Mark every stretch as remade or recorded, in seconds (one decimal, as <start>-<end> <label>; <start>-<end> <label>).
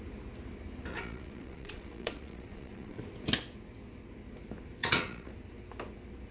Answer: 0.0-0.9 recorded; 0.9-3.0 remade; 3.0-4.8 recorded; 4.8-5.3 remade; 5.3-6.3 recorded